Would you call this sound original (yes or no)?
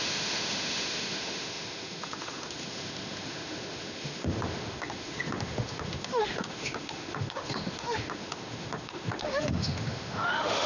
no